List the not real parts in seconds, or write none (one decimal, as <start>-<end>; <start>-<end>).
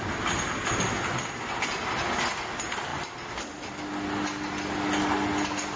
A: none